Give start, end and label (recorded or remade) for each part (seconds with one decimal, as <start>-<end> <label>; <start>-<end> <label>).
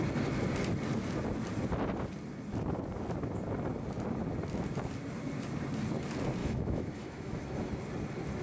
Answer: 0.0-6.4 recorded; 6.4-7.7 remade; 7.7-8.4 recorded